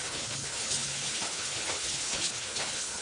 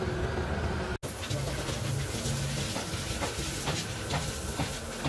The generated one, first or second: first